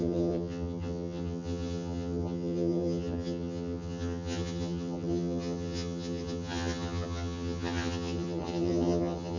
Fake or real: fake